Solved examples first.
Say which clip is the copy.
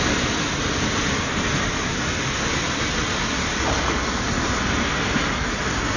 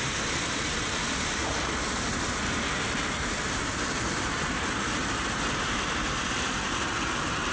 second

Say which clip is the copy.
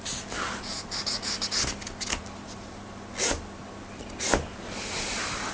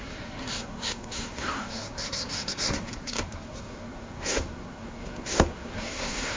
second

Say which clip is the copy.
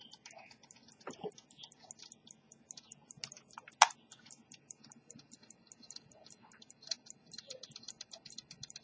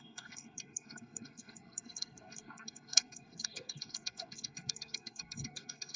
second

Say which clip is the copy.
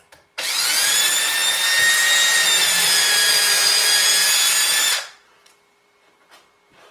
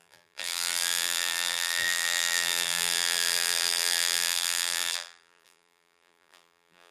second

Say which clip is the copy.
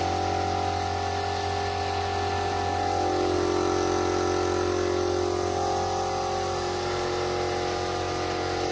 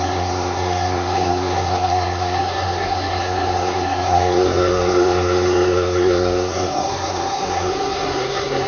second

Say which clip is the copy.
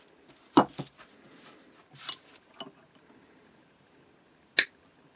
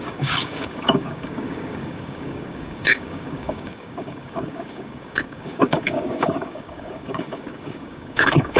second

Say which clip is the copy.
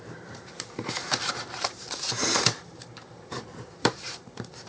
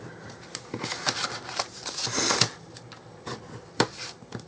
first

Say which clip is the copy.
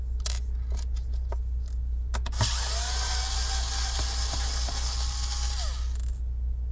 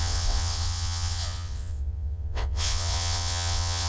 second